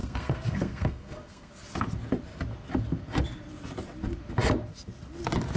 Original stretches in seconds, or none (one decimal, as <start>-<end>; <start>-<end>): 1.5-5.6